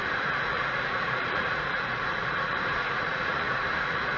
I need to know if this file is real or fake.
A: fake